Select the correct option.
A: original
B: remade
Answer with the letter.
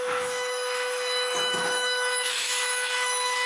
B